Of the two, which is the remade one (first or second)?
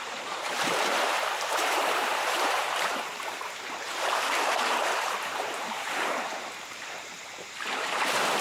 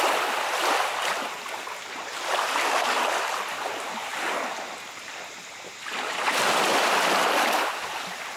first